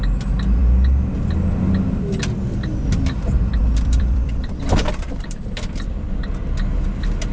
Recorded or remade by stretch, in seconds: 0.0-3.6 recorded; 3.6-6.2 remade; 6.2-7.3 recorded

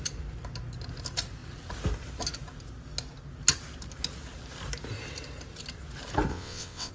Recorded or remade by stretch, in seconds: 0.0-6.3 recorded; 6.3-6.9 remade

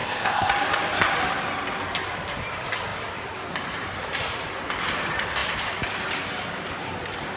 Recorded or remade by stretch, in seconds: 0.0-0.5 remade; 0.5-7.4 recorded